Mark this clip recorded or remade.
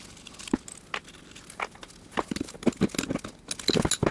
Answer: recorded